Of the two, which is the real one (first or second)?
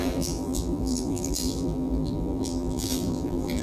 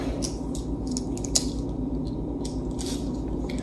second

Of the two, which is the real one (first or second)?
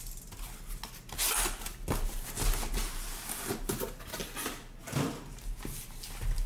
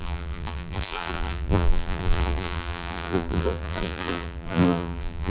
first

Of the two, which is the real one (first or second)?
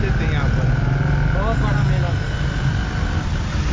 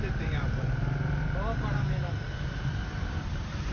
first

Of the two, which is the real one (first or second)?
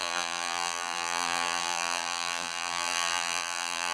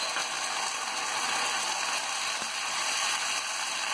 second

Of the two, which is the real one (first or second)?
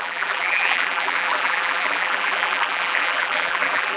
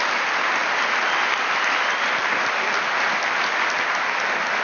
second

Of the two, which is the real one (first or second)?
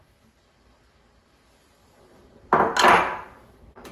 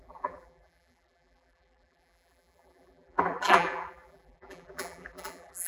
first